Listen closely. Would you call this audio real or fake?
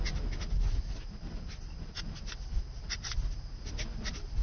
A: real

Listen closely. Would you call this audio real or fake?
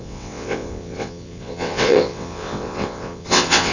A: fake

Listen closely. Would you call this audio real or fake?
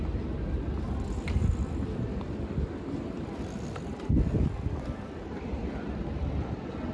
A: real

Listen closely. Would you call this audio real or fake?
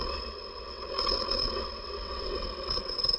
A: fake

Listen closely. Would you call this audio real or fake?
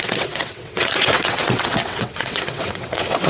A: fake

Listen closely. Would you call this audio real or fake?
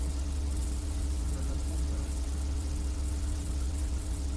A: fake